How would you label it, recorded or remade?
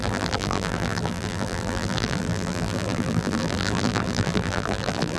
remade